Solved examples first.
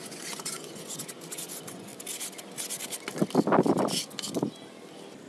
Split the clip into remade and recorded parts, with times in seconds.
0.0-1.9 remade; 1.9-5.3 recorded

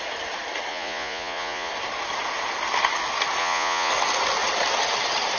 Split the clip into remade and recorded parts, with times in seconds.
0.0-0.7 recorded; 0.7-1.7 remade; 1.7-3.4 recorded; 3.4-3.9 remade; 3.9-5.4 recorded

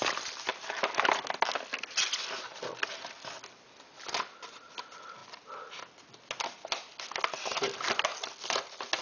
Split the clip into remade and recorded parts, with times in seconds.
0.0-9.0 recorded

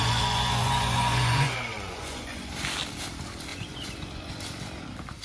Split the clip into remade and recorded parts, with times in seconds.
0.0-2.5 remade; 2.5-3.5 recorded; 3.5-4.4 remade; 4.4-5.2 recorded

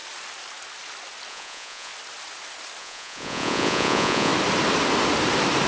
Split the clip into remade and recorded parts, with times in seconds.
0.0-1.3 recorded; 1.3-1.9 remade; 1.9-2.8 recorded; 2.8-4.3 remade; 4.3-5.7 recorded

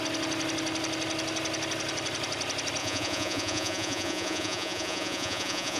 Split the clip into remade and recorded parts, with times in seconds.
0.0-2.8 recorded; 2.8-5.8 remade

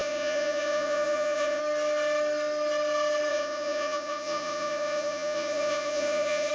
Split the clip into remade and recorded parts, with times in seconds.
0.0-1.6 remade; 1.6-3.3 recorded; 3.3-6.5 remade

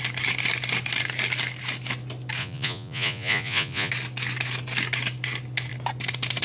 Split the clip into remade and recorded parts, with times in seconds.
0.0-2.4 recorded; 2.4-3.9 remade; 3.9-6.4 recorded